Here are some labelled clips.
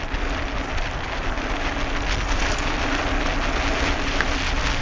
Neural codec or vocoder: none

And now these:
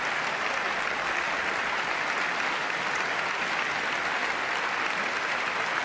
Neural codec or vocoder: none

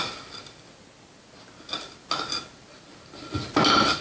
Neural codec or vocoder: none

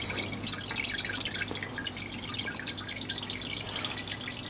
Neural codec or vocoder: none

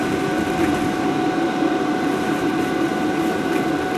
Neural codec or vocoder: vocoder, BigVGAN v2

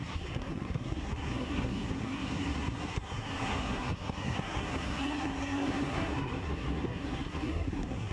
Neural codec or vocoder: codec, SNAC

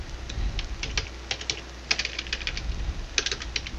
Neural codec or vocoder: none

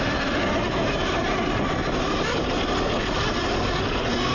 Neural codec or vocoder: none